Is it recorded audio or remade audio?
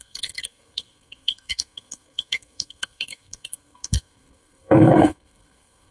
remade